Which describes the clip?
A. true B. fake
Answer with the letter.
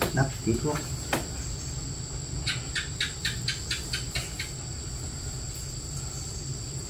A